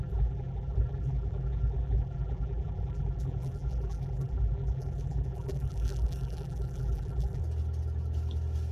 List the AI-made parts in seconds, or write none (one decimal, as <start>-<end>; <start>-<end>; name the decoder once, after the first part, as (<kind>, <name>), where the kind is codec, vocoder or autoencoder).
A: 0.0-7.4 (vocoder, BigVGAN v2)